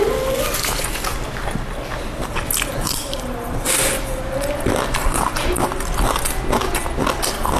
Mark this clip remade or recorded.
recorded